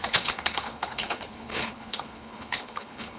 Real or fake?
fake